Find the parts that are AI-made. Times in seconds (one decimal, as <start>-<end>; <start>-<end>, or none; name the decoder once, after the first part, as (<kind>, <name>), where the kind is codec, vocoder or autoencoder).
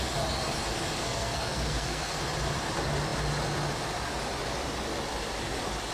1.0-2.2 (codec, SNAC)